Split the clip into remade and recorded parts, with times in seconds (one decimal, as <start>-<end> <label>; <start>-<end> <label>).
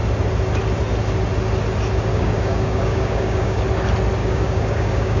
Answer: 0.0-2.1 recorded; 2.1-3.6 remade; 3.6-4.2 recorded; 4.2-5.2 remade